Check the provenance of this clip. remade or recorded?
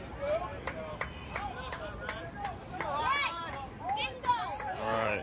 remade